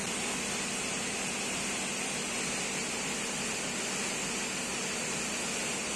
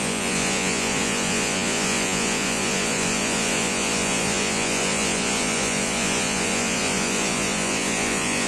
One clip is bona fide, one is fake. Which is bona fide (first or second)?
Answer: first